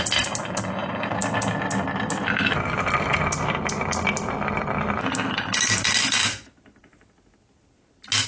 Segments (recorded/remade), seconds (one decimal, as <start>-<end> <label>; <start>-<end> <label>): 0.0-8.3 recorded